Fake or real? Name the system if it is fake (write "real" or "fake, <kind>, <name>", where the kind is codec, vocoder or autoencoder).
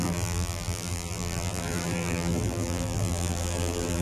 fake, vocoder, BigVGAN v2